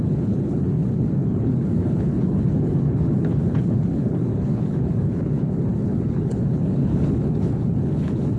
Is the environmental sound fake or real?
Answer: fake